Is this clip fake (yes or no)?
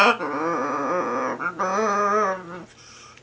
no